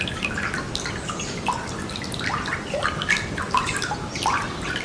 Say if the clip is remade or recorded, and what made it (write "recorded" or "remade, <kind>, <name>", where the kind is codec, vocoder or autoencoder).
recorded